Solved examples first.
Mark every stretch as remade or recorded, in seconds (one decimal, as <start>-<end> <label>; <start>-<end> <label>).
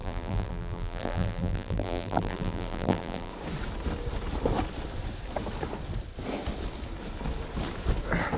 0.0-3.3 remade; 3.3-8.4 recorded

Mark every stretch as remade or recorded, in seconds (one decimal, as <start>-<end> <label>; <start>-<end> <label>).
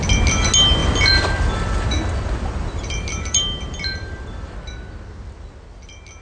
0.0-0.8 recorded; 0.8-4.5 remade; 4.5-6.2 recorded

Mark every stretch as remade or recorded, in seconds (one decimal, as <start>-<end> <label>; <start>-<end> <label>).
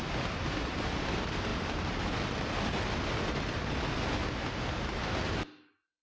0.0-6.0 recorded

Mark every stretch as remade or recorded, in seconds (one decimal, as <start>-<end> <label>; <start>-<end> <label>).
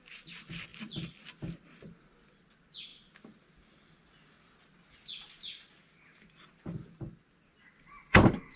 0.0-8.6 recorded